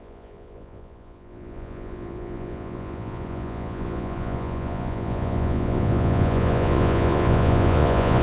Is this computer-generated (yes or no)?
yes